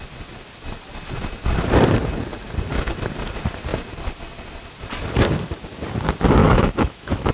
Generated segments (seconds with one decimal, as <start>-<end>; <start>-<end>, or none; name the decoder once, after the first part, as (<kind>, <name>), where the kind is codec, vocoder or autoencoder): 6.4-7.3 (autoencoder, DAC-VAE)